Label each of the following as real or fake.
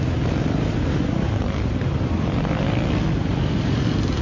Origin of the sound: real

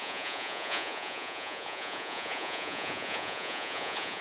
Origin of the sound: fake